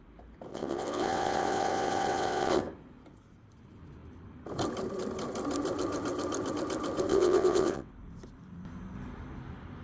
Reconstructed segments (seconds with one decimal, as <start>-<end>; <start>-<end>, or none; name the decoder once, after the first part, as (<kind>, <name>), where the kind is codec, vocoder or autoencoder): 0.5-2.6 (vocoder, WaveNeXt); 7.1-7.9